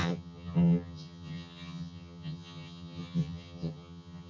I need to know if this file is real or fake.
fake